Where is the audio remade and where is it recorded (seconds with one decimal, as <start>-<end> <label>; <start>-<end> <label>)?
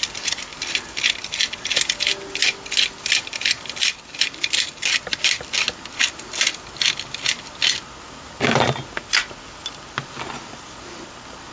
0.0-11.5 recorded